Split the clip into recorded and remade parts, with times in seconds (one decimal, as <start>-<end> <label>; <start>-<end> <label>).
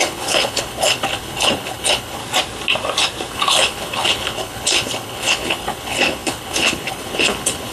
0.0-2.2 remade; 2.2-3.3 recorded; 3.3-7.7 remade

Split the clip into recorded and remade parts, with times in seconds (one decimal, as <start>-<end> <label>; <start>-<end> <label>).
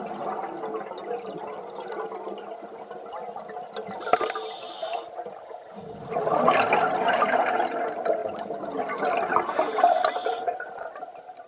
0.0-11.5 recorded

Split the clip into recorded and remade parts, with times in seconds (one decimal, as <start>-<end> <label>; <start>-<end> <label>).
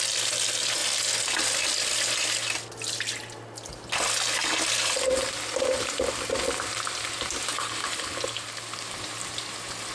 0.0-7.5 recorded; 7.5-8.2 remade; 8.2-9.9 recorded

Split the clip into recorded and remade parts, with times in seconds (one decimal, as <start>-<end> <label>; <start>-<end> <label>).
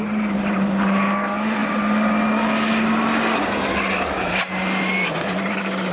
0.0-5.9 recorded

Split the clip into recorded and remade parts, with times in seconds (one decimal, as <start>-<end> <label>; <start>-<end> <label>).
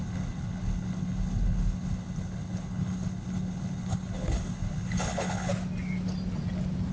0.0-5.5 remade; 5.5-6.9 recorded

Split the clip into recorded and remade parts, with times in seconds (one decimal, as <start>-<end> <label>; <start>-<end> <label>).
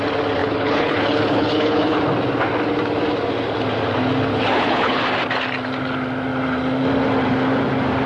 0.0-0.4 recorded; 0.4-2.0 remade; 2.0-4.3 recorded; 4.3-5.0 remade; 5.0-8.1 recorded